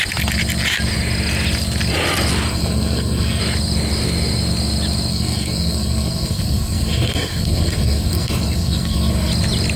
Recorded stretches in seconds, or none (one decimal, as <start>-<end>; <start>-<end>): 0.0-2.5; 3.4-5.1; 9.3-9.8